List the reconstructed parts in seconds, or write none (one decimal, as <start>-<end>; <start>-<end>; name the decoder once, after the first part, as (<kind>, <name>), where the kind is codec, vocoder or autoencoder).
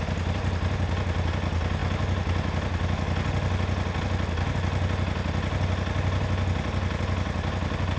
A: none